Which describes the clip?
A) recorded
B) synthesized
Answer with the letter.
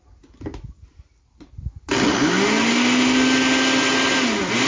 A